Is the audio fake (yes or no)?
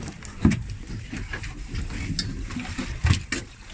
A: no